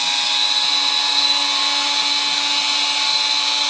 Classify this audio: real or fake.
real